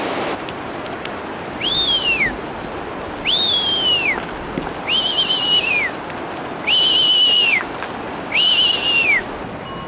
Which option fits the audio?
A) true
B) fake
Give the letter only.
A